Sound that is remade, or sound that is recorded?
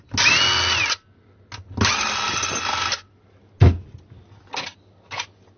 recorded